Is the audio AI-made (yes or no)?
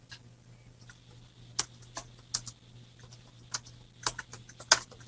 no